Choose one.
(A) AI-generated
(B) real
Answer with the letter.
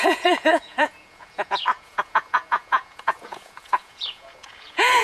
A